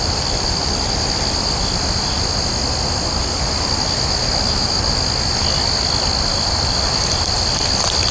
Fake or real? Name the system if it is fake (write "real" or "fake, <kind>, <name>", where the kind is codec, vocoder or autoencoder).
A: real